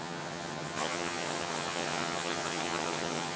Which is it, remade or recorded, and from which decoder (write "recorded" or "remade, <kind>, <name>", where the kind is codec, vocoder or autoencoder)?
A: remade, vocoder, HiFi-GAN